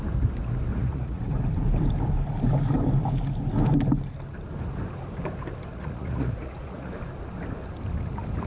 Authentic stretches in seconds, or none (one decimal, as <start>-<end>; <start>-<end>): 0.0-0.7; 1.2-5.7; 6.9-8.5